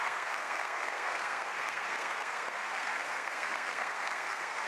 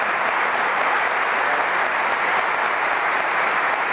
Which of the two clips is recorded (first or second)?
second